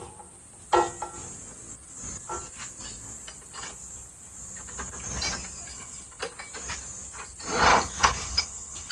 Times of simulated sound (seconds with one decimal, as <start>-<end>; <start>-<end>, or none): 5.7-6.2; 7.7-8.9